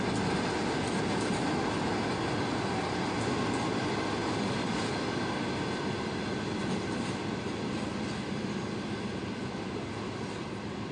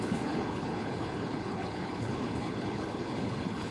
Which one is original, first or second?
first